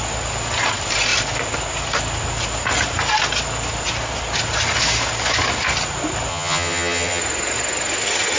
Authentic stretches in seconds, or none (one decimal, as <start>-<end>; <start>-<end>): 0.0-6.3; 7.2-8.4